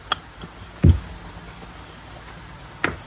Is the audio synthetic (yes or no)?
no